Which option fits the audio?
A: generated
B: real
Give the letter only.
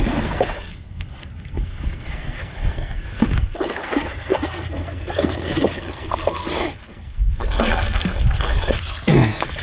A